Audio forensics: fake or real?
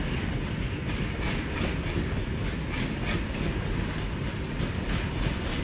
real